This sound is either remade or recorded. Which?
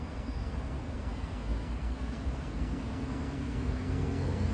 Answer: remade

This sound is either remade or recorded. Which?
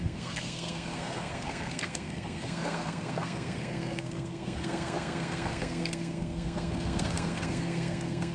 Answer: remade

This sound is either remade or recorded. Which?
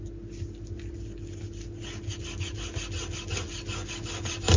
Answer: recorded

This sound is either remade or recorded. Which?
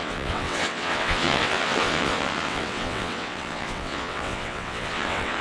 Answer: remade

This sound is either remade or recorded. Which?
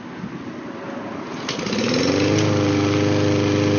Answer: recorded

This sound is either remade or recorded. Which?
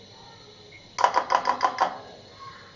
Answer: recorded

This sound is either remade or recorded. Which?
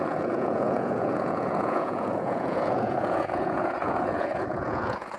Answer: remade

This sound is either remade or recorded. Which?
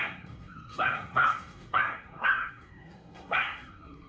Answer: remade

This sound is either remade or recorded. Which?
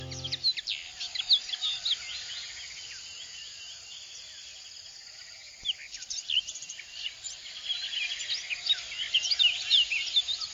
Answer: recorded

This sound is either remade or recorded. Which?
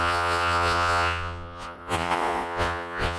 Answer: remade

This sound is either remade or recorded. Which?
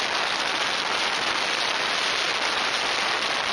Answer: recorded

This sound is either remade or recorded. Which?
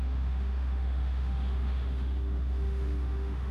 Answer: remade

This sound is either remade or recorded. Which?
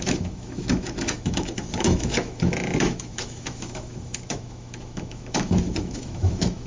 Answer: remade